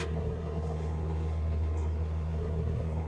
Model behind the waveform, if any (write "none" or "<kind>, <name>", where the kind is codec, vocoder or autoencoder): codec, SNAC